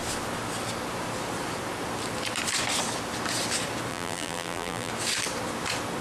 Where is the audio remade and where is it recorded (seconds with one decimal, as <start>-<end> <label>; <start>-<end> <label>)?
0.0-3.9 recorded; 3.9-4.9 remade; 4.9-6.0 recorded